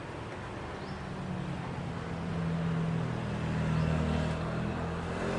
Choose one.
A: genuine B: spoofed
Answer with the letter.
A